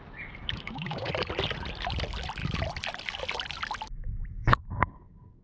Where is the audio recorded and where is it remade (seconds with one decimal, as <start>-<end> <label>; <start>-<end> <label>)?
0.0-0.4 recorded; 0.4-1.1 remade; 1.1-4.4 recorded; 4.4-5.4 remade